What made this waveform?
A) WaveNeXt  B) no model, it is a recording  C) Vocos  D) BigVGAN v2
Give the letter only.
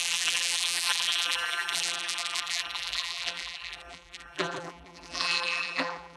D